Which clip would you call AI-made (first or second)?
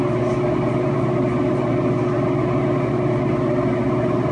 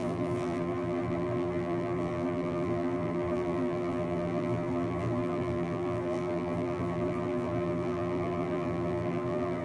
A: second